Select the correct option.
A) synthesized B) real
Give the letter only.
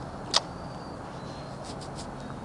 B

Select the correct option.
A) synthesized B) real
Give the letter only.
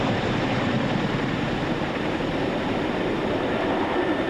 A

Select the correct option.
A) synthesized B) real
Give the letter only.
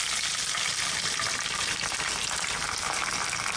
B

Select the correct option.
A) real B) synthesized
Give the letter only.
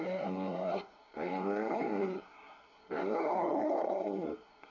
B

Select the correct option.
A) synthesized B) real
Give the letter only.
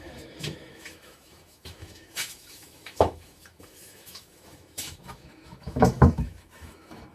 A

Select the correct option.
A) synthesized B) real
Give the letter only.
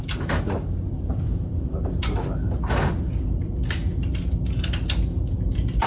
B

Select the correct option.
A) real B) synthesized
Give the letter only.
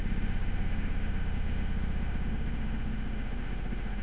B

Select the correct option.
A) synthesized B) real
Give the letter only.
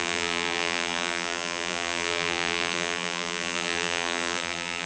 A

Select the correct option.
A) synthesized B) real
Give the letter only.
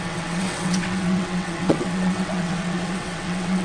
A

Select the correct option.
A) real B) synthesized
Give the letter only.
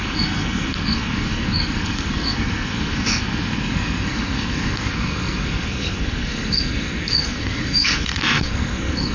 B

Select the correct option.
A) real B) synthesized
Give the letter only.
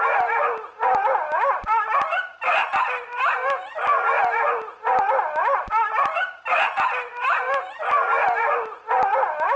A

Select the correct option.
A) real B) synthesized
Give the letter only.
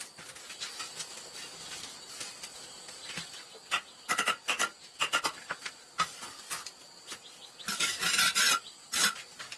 A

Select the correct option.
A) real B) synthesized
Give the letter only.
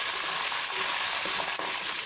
A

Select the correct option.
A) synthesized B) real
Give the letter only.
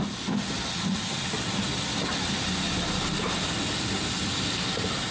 B